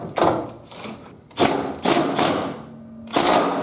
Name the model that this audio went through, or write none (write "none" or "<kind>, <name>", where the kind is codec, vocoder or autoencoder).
none